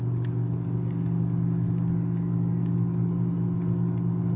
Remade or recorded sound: remade